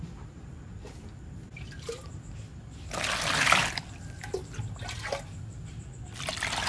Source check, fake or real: real